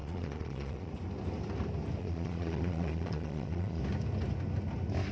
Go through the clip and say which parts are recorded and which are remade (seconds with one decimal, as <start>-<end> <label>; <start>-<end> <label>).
0.0-0.9 remade; 0.9-2.0 recorded; 2.0-3.8 remade; 3.8-5.1 recorded